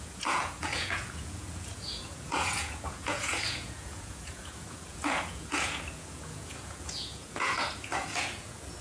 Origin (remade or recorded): remade